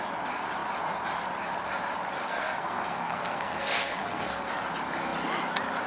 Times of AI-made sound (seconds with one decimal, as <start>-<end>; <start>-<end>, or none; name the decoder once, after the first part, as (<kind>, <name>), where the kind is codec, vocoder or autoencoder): 2.2-4.5 (codec, SNAC)